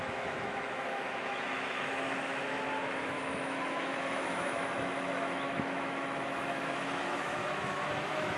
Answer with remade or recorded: remade